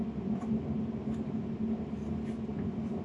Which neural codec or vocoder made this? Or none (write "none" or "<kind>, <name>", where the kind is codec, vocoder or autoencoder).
none